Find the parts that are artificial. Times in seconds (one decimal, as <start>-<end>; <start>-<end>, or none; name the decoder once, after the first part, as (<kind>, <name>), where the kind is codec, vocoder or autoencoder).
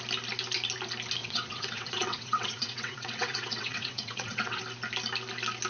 1.2-4.6 (vocoder, WaveNeXt)